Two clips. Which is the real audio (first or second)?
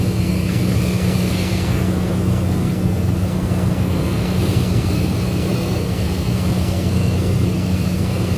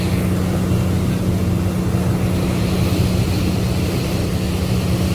second